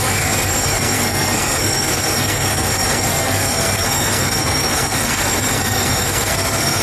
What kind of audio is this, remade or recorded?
remade